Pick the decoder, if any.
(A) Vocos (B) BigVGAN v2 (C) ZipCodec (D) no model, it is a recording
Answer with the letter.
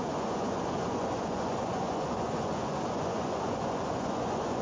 A